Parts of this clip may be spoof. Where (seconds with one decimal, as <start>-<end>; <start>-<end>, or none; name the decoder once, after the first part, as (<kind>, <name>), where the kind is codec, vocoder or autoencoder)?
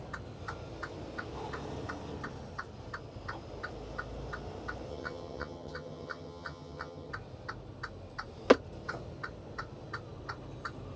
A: 4.9-7.1 (vocoder, HiFi-GAN)